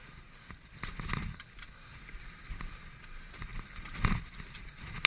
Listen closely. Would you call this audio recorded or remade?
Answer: recorded